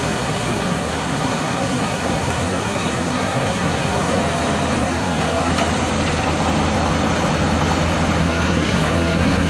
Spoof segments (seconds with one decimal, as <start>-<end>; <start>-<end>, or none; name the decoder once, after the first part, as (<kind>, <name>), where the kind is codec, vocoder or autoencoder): 0.0-4.2 (codec, SNAC); 4.8-5.5; 8.2-9.5